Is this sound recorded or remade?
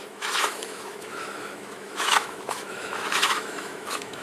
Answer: remade